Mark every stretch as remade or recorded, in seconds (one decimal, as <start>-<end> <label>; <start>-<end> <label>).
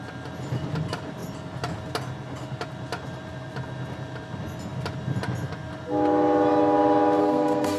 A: 0.0-7.2 recorded; 7.2-7.8 remade